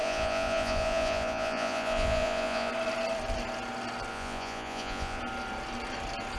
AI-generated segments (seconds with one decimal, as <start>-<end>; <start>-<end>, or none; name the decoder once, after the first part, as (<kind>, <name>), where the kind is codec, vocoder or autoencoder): 0.0-2.7 (vocoder, Vocos); 4.1-5.2